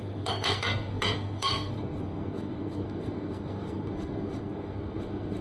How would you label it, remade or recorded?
remade